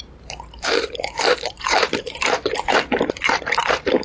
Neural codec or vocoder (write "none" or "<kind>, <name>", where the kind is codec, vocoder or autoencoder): vocoder, BigVGAN v2